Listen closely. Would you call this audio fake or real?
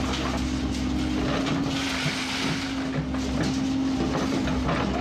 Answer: real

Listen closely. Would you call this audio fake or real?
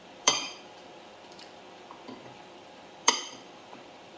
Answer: fake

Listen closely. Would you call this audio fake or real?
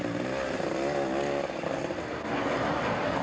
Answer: real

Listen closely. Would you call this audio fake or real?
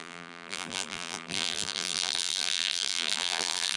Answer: fake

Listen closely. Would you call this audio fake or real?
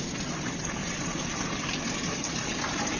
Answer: fake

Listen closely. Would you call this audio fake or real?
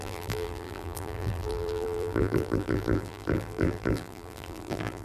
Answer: fake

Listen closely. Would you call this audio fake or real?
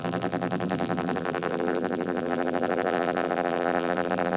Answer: fake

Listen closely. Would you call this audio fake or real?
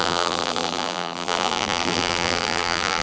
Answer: fake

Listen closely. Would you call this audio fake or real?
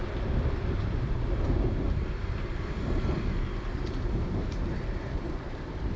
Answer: fake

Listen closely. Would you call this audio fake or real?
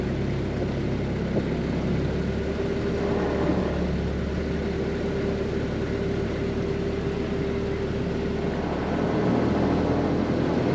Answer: real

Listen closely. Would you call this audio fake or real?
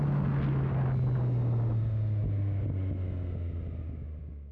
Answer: real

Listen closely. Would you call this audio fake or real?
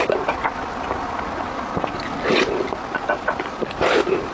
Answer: fake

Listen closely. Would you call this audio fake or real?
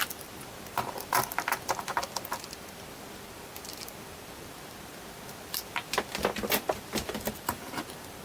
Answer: fake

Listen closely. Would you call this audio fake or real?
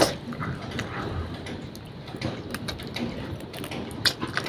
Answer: real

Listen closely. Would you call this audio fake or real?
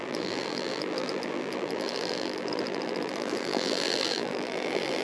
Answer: fake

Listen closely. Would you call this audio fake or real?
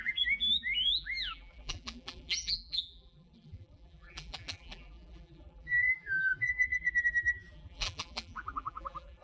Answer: fake